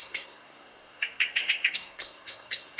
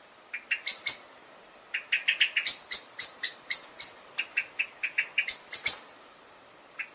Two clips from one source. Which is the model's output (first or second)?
first